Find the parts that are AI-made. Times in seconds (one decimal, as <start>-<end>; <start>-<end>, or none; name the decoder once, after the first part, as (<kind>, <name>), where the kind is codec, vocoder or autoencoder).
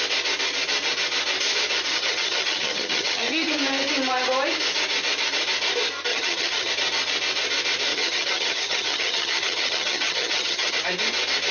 1.9-3.5 (vocoder, HiFi-GAN); 6.1-6.7; 7.9-10.8